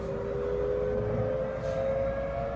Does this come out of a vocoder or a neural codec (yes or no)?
no